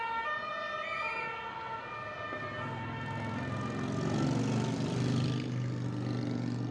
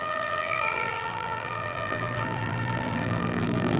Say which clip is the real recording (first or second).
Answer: first